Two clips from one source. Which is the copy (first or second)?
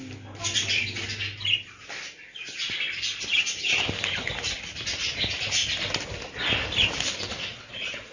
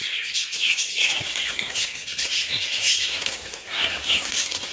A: second